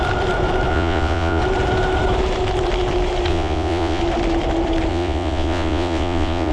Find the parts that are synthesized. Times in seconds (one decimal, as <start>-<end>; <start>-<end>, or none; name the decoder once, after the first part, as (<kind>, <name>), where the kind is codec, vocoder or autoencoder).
0.7-1.4 (vocoder, Vocos); 3.3-4.0; 4.9-6.5